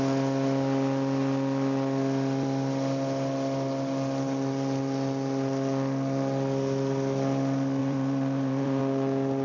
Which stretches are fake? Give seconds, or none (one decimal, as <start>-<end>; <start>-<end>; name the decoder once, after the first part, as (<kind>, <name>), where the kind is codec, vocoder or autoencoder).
7.8-8.8 (vocoder, BigVGAN v2)